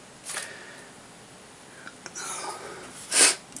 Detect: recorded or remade recorded